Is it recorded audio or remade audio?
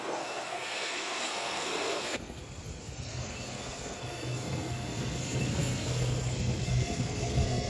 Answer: remade